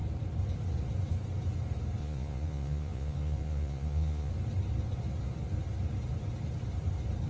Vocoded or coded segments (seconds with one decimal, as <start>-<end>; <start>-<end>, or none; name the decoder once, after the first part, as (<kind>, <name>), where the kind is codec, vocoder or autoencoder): 2.0-4.3 (vocoder, Vocos)

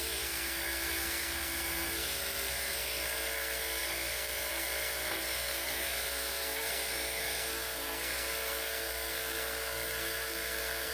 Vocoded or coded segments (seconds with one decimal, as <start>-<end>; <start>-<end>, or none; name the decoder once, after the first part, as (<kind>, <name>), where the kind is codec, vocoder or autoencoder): 0.0-10.9 (codec, SNAC)